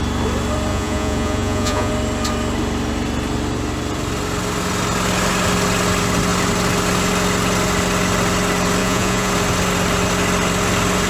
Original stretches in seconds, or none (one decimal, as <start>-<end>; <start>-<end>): 0.0-0.7; 1.9-8.8; 9.3-11.1